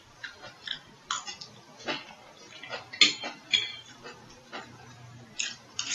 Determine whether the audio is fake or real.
real